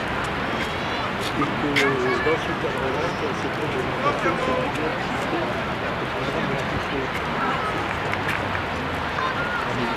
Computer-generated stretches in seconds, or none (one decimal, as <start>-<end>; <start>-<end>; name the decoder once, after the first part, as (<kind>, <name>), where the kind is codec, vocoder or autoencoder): none